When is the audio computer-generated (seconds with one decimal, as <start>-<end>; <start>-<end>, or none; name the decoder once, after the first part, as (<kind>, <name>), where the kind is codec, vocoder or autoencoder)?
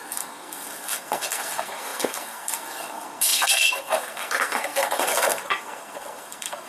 0.0-6.7 (codec, SNAC)